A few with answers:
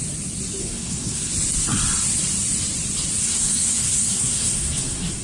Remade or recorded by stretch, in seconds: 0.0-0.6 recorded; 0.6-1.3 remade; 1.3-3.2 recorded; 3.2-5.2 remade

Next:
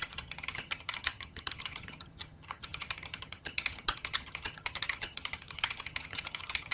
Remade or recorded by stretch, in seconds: 0.0-6.7 remade

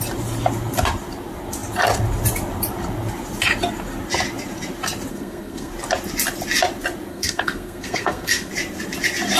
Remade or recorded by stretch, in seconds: 0.0-5.1 recorded; 5.1-5.7 remade; 5.7-7.1 recorded; 7.1-8.5 remade; 8.5-9.4 recorded

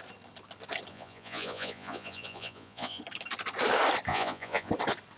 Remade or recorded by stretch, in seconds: 0.0-0.9 recorded; 0.9-3.0 remade; 3.0-4.1 recorded; 4.1-4.7 remade; 4.7-5.2 recorded

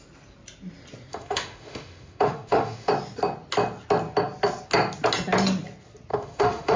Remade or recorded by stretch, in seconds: 0.0-1.1 recorded; 1.1-2.9 remade; 2.9-6.1 recorded; 6.1-6.8 remade